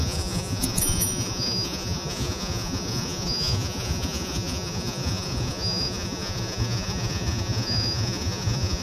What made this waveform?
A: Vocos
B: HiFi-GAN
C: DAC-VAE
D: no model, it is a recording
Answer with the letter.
A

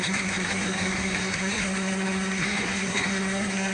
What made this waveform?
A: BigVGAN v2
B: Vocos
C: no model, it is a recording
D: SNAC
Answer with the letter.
D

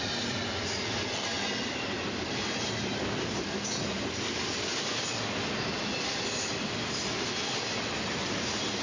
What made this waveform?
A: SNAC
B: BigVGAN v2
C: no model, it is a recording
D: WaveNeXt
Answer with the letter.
C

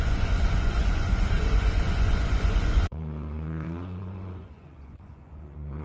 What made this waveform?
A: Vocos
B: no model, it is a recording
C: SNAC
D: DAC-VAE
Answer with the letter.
A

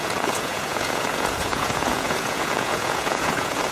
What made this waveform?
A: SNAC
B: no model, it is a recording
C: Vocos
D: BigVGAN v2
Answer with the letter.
C